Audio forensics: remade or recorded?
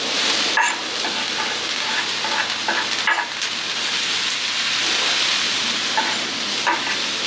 recorded